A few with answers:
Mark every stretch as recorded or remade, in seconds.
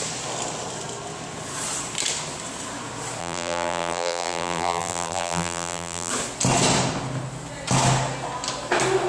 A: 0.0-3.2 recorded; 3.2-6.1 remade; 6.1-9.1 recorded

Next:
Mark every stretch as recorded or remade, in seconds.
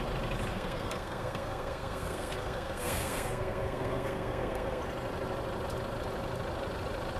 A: 0.0-0.5 recorded; 0.5-4.8 remade; 4.8-7.2 recorded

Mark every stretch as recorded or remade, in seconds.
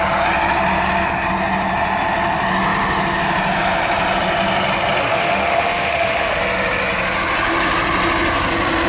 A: 0.0-5.0 recorded; 5.0-6.4 remade; 6.4-8.9 recorded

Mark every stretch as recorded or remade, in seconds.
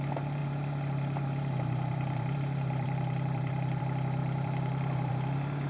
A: 0.0-0.4 recorded; 0.4-3.8 remade; 3.8-4.2 recorded; 4.2-5.1 remade; 5.1-5.7 recorded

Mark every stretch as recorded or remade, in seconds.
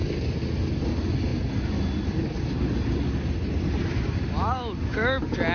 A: 0.0-5.5 recorded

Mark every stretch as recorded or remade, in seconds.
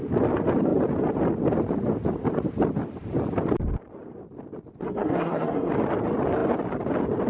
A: 0.0-4.9 recorded; 4.9-5.7 remade; 5.7-7.3 recorded